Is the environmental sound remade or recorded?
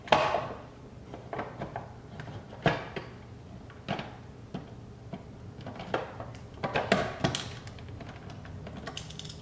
recorded